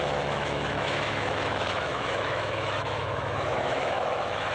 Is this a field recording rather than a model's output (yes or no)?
no